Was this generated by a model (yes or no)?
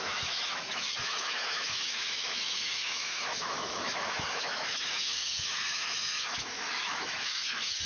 yes